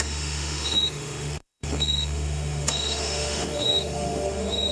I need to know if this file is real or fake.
fake